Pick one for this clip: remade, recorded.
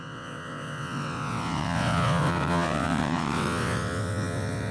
remade